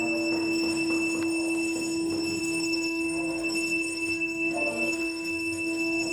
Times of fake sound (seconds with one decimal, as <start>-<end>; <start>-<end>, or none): 2.4-6.1